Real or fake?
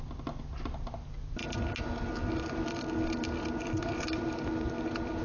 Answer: real